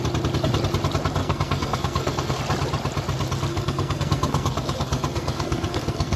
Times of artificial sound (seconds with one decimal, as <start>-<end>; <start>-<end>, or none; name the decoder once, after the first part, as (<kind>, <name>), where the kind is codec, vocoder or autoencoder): 1.2-2.4 (codec, SNAC); 3.5-6.2